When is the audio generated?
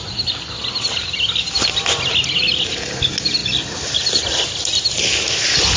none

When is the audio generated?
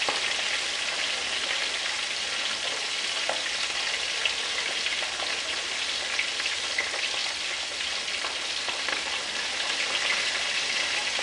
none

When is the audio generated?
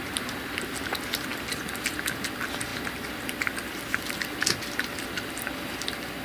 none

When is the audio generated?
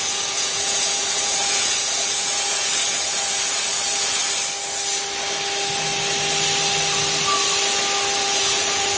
0.0-4.2 (vocoder, Vocos); 8.2-9.0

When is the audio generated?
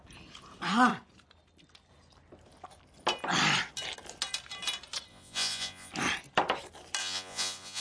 5.1-5.9 (vocoder, Vocos); 7.0-7.8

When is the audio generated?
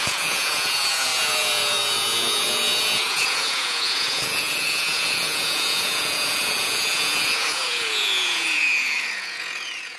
0.0-10.0 (vocoder, Vocos)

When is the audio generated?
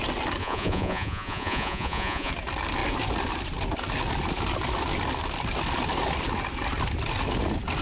0.4-2.3 (vocoder, Vocos)